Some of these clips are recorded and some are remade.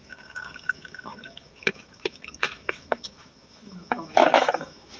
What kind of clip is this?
remade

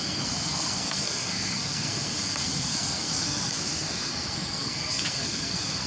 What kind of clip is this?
remade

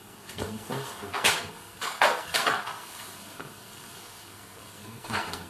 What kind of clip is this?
remade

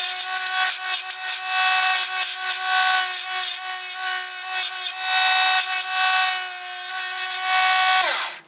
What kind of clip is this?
recorded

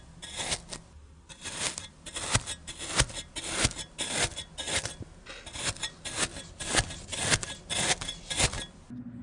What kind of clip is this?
recorded